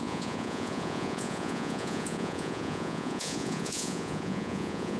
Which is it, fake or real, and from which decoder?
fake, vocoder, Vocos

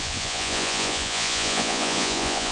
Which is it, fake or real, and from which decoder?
fake, vocoder, Vocos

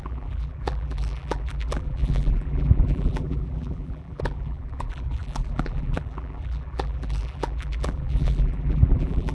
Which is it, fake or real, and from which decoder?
fake, vocoder, BigVGAN v2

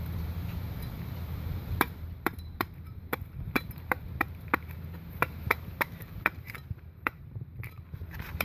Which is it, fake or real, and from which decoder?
fake, vocoder, BigVGAN v2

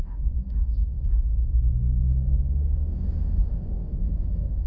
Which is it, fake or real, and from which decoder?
fake, autoencoder, DAC-VAE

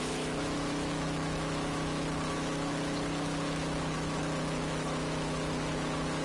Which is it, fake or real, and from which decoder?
fake, autoencoder, DAC-VAE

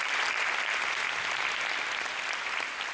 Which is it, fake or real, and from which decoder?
real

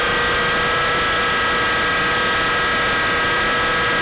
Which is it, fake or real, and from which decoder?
real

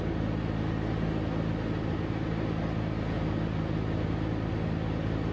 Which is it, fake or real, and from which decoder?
real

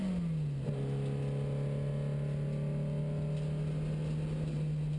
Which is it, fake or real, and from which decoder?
real